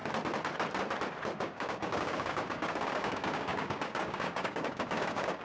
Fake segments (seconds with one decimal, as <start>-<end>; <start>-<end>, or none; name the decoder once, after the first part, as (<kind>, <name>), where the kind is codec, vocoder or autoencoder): 1.4-5.4 (codec, DAC)